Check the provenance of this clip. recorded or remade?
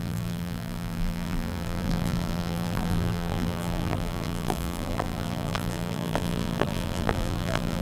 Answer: remade